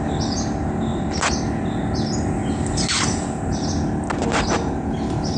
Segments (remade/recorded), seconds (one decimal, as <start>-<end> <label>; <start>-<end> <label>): 0.0-5.4 recorded